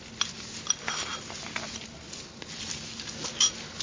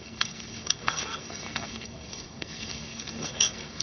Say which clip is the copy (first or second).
second